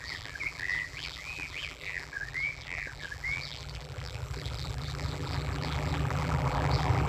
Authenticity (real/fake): fake